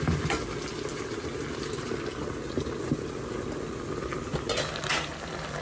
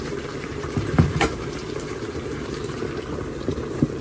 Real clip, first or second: first